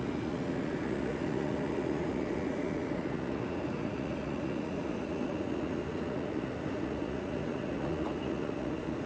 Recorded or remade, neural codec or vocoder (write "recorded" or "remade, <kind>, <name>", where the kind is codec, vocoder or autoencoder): remade, vocoder, Vocos